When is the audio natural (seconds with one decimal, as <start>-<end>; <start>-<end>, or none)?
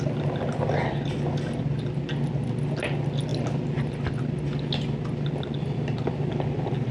0.0-6.9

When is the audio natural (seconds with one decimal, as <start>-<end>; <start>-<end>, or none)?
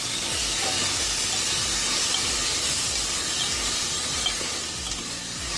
0.0-5.6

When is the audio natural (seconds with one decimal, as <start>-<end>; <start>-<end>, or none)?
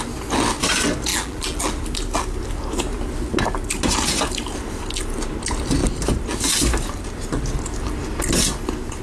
0.0-1.1; 1.7-9.0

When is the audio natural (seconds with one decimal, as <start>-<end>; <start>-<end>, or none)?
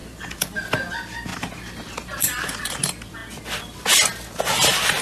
0.9-1.3; 2.7-5.0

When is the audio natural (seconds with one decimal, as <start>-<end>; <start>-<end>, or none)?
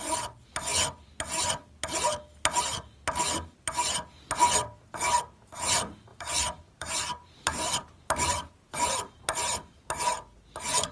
0.0-6.1; 9.2-10.9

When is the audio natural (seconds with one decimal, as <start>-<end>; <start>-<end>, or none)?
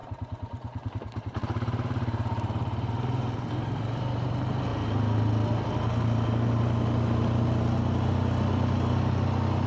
4.3-9.7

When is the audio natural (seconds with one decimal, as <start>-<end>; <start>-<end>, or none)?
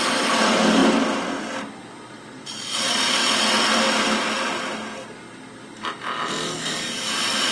0.8-2.1; 3.2-6.0